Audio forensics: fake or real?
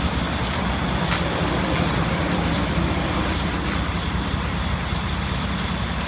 real